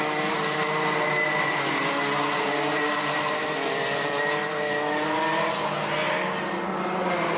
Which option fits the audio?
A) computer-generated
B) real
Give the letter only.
B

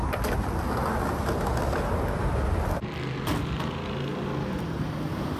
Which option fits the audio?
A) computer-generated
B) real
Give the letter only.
B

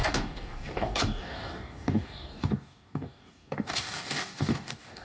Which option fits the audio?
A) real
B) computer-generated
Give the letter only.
B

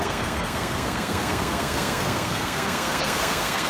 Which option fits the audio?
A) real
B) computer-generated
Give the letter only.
B